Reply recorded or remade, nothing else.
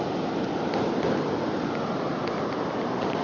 recorded